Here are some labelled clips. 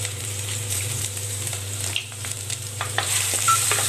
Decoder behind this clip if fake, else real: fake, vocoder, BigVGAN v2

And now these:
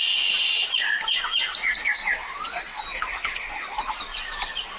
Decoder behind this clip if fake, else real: real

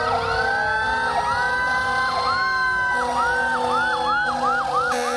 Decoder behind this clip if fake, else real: real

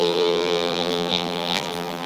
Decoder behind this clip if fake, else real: fake, vocoder, BigVGAN v2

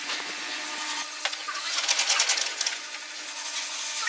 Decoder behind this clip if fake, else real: fake, vocoder, Vocos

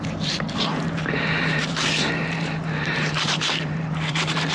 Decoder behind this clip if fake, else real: fake, vocoder, BigVGAN v2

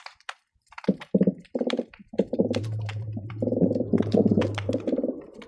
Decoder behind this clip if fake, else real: fake, vocoder, BigVGAN v2